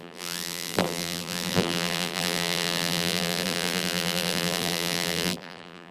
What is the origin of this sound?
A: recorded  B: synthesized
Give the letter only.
B